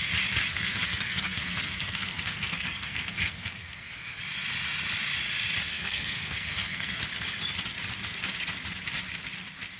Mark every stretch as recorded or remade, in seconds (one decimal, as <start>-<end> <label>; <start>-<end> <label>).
0.0-0.5 recorded; 0.5-4.2 remade; 4.2-5.7 recorded; 5.7-7.0 remade; 7.0-9.8 recorded